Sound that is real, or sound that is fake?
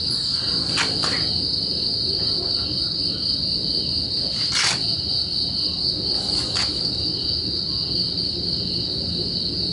real